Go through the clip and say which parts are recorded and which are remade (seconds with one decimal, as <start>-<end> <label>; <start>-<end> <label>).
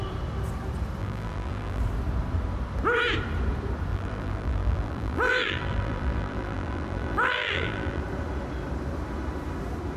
0.0-1.0 recorded; 1.0-1.8 remade; 1.8-3.9 recorded; 3.9-8.0 remade; 8.0-10.0 recorded